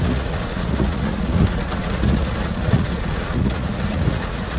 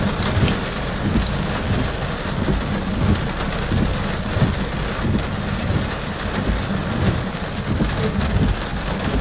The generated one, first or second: first